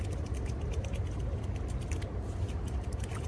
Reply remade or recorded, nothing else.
recorded